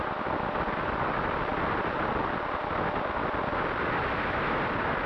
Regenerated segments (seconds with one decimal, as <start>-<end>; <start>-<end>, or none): none